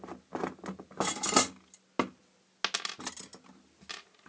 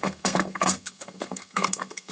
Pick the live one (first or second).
first